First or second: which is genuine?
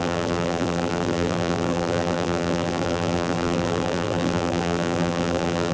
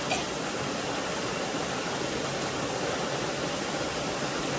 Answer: second